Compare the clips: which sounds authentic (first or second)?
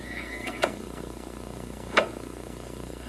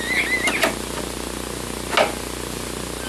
second